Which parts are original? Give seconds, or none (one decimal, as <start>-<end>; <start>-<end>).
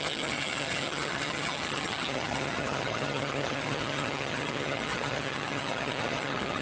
none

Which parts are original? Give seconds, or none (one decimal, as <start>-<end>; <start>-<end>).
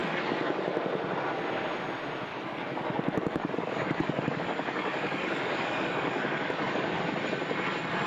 0.6-2.3; 7.0-8.1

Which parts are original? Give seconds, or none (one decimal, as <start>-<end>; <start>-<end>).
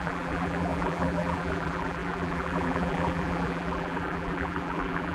none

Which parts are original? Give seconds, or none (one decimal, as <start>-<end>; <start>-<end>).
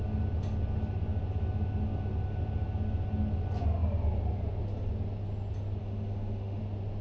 0.0-5.8; 6.6-7.0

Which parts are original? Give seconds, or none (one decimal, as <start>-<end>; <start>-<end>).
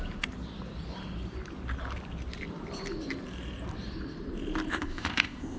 0.0-4.7